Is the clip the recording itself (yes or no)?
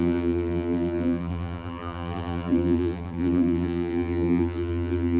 no